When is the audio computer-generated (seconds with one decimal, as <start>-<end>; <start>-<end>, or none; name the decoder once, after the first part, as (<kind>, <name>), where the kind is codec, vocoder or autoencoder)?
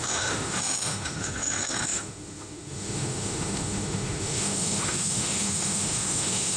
0.0-6.6 (autoencoder, DAC-VAE)